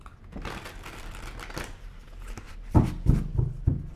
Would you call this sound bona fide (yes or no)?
yes